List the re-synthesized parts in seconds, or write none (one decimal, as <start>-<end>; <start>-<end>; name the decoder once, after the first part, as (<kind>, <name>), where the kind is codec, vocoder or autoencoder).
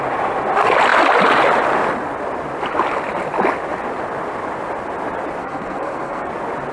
5.4-6.3 (codec, SNAC)